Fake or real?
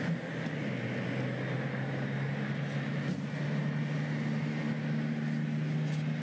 real